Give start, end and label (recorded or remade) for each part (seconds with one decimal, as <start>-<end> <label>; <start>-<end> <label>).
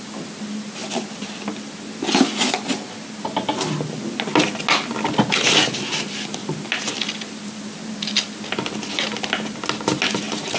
0.0-10.6 recorded